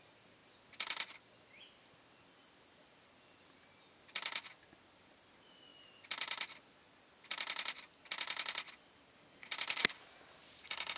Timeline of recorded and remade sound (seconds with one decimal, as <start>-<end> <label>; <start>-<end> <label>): 0.0-11.0 recorded

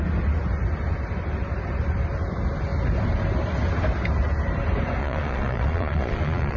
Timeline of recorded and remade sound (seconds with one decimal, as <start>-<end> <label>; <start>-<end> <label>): 0.0-5.0 recorded; 5.0-6.6 remade

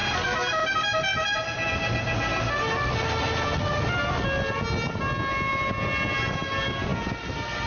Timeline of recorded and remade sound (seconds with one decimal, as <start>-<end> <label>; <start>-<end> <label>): 0.0-7.7 recorded

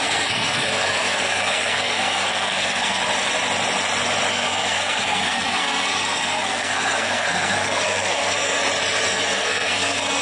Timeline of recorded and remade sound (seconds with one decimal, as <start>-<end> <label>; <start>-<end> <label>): 0.0-3.0 remade; 3.0-4.3 recorded; 4.3-8.6 remade; 8.6-9.1 recorded; 9.1-10.2 remade

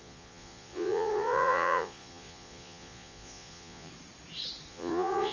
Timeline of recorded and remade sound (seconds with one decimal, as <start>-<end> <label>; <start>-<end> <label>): 0.0-3.9 remade; 3.9-4.7 recorded; 4.7-5.3 remade

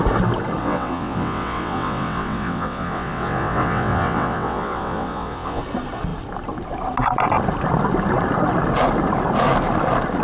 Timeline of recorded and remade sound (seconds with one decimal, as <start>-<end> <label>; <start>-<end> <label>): 0.0-0.6 recorded; 0.6-5.6 remade; 5.6-10.2 recorded

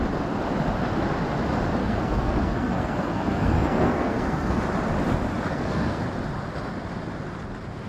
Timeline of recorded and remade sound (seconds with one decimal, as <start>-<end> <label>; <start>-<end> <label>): 0.0-1.8 recorded; 1.8-4.6 remade; 4.6-5.5 recorded; 5.5-6.0 remade; 6.0-7.9 recorded